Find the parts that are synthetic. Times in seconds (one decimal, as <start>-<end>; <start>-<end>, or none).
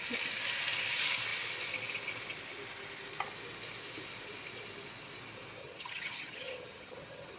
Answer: 5.6-7.4